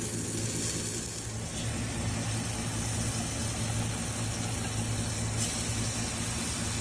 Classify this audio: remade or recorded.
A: recorded